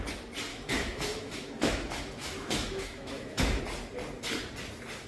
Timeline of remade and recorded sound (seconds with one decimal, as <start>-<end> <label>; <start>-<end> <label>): 0.0-0.5 recorded; 0.5-3.6 remade; 3.6-5.1 recorded